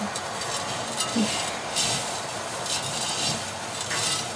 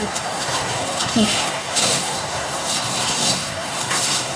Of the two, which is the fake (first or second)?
second